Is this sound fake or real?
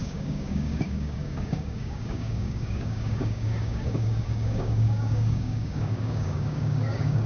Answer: fake